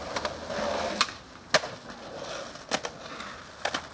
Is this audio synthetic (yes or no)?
no